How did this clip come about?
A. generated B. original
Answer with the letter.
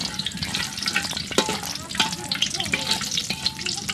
A